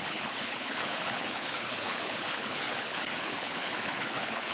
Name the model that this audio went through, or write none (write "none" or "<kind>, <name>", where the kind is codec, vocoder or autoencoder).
codec, HILCodec